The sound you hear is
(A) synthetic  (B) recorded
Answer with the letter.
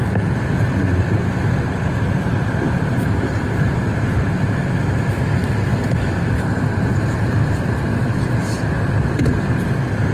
B